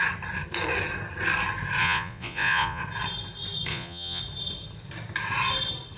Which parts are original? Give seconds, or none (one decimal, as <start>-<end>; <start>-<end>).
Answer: 0.0-1.8; 2.8-3.7; 4.2-6.0